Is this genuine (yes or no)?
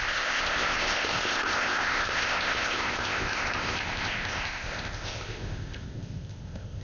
no